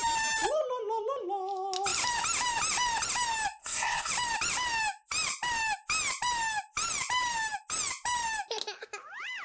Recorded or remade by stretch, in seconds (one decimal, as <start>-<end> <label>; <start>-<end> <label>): 0.0-3.6 recorded; 3.6-4.1 remade; 4.1-9.4 recorded

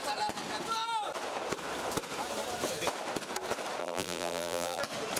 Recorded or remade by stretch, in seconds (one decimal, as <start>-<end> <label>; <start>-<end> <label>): 0.0-3.8 recorded; 3.8-4.8 remade; 4.8-5.2 recorded

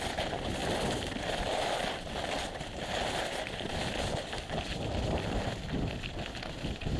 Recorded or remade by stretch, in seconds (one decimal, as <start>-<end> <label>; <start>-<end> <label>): 0.0-7.0 recorded

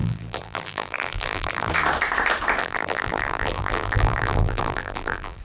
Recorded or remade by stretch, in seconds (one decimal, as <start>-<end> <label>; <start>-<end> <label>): 0.0-1.7 remade; 1.7-2.6 recorded; 2.6-5.4 remade